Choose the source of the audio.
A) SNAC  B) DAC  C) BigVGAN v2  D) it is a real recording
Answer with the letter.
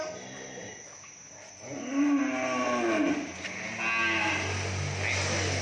D